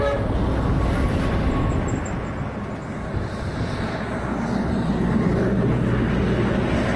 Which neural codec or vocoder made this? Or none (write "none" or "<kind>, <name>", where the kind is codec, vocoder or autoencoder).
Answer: none